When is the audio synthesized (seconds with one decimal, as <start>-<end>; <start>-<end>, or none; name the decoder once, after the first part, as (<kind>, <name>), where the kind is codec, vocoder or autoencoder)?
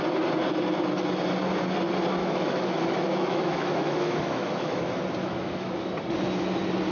2.2-4.8 (autoencoder, DAC-VAE); 5.2-5.9